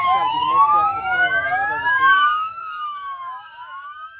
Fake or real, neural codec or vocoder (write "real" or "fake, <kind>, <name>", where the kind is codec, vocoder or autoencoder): fake, autoencoder, DAC-VAE